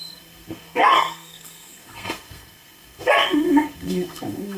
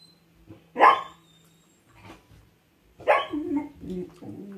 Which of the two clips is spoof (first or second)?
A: first